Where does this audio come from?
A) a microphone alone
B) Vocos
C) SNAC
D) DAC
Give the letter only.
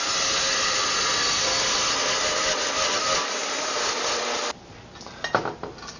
A